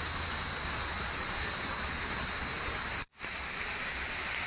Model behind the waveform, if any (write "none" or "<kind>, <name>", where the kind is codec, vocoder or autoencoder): none